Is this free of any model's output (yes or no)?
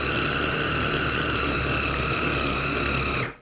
yes